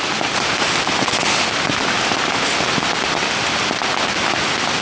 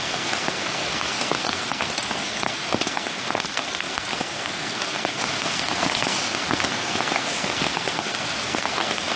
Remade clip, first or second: second